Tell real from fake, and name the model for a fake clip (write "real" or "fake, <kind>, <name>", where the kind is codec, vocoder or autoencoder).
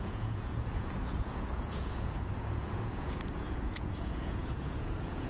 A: fake, vocoder, Vocos